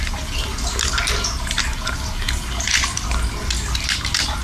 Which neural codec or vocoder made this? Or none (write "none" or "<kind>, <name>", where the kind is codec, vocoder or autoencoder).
none